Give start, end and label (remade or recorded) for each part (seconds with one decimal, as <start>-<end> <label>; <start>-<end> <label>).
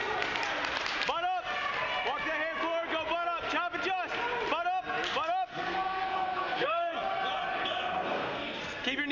0.0-5.5 recorded; 5.5-6.9 remade; 6.9-7.6 recorded; 7.6-8.6 remade; 8.6-9.1 recorded